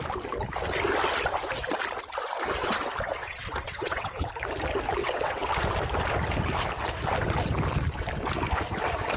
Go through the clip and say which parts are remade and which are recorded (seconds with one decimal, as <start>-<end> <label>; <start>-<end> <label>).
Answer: 0.0-3.2 recorded; 3.2-4.3 remade; 4.3-5.0 recorded; 5.0-5.5 remade; 5.5-9.2 recorded